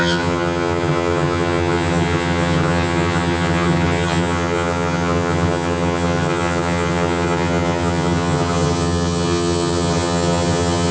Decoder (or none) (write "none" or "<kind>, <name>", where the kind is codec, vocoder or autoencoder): vocoder, HiFi-GAN